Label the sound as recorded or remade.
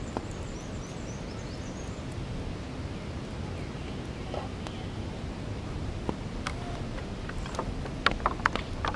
recorded